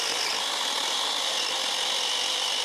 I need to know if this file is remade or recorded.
recorded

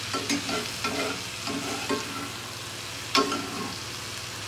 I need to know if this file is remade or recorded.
recorded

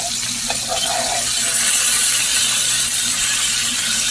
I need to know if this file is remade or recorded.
recorded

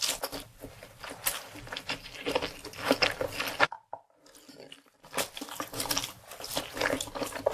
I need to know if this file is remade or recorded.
recorded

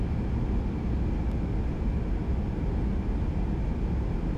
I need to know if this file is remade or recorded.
recorded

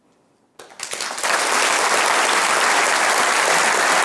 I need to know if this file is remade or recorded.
recorded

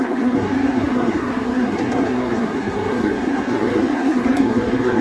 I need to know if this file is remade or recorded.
remade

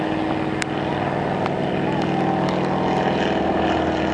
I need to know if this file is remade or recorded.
recorded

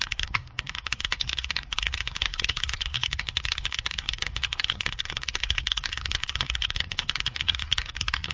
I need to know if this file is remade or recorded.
remade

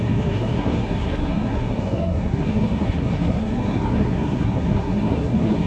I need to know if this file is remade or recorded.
remade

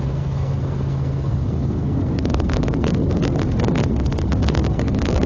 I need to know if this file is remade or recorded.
remade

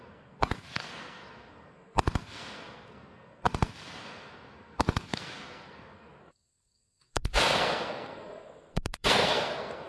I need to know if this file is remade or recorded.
remade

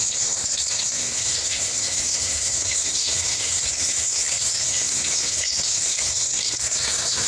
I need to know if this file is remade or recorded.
remade